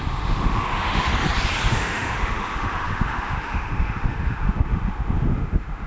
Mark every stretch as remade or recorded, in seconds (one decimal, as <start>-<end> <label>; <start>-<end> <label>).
0.0-1.1 remade; 1.1-1.7 recorded; 1.7-5.9 remade